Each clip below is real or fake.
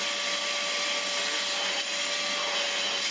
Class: real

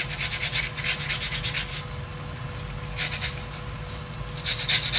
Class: real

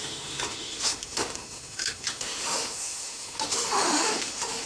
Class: fake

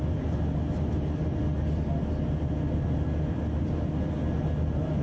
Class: real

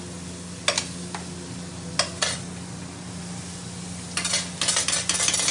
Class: real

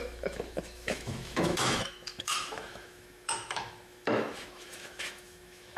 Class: fake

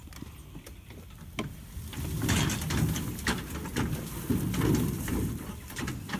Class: real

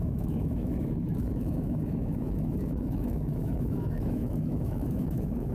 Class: fake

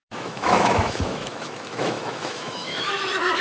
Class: fake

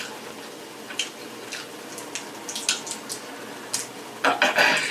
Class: real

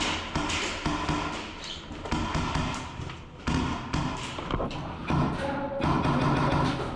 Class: real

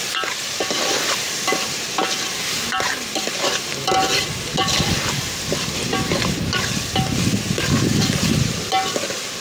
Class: real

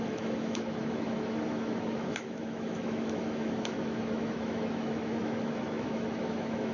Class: fake